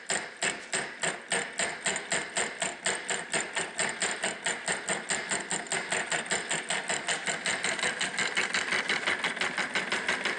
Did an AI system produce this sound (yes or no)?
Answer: no